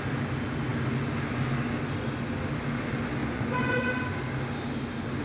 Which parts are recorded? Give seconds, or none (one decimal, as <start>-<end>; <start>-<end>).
0.0-3.2; 3.9-5.2